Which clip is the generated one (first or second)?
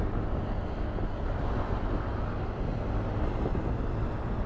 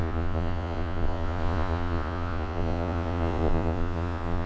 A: second